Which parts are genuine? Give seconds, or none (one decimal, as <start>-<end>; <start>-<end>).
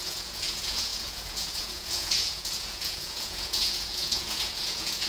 none